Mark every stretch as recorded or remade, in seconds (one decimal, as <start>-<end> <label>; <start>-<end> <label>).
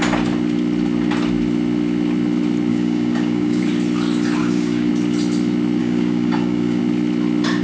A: 0.0-2.7 recorded; 2.7-3.6 remade; 3.6-4.4 recorded; 4.4-4.9 remade; 4.9-5.8 recorded; 5.8-6.8 remade; 6.8-7.6 recorded